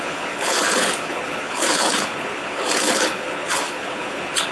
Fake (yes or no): yes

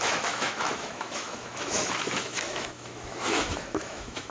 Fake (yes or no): yes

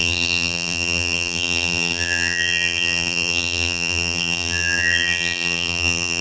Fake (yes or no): yes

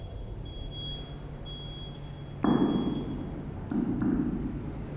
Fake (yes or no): no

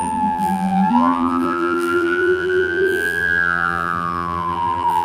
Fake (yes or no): yes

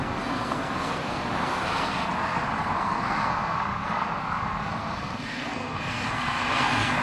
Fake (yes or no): yes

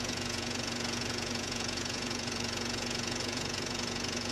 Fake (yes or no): yes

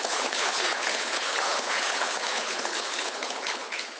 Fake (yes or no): yes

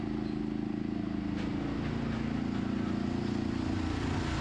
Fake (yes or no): no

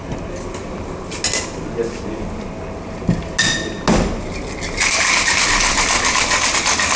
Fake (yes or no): no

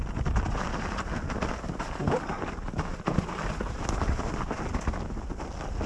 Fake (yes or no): no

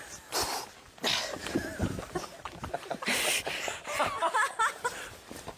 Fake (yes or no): no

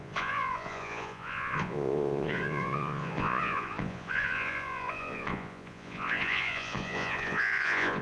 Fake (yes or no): yes